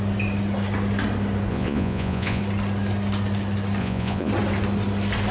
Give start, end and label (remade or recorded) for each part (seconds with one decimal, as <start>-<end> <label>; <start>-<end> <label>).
0.0-1.5 recorded; 1.5-2.4 remade; 2.4-3.8 recorded; 3.8-4.3 remade; 4.3-5.3 recorded